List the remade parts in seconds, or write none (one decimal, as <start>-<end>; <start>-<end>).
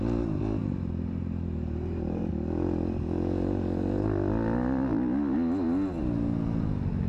0.6-2.3